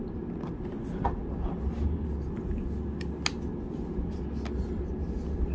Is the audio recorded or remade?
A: recorded